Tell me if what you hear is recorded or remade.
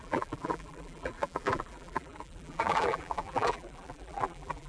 remade